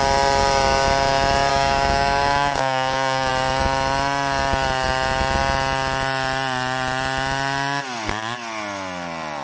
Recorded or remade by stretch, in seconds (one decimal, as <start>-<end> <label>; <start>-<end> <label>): 0.0-1.5 recorded; 1.5-3.3 remade; 3.3-9.4 recorded